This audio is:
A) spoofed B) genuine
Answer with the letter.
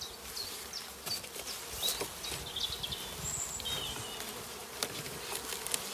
B